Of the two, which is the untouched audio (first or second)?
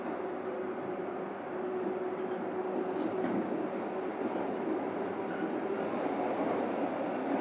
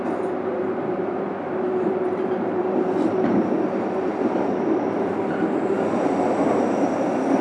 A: first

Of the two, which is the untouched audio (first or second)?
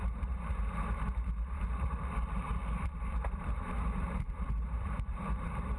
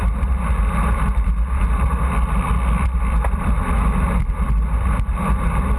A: second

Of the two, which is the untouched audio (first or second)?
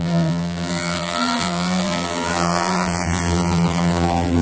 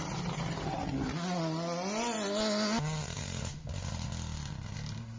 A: second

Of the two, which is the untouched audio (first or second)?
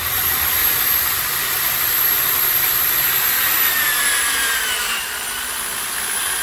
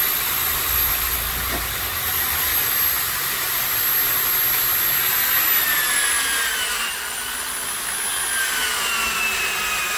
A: second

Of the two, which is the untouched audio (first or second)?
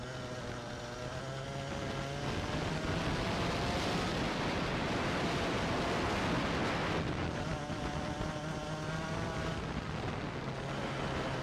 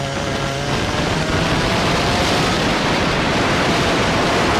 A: first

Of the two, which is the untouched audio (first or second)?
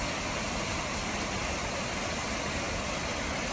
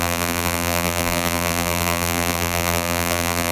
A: first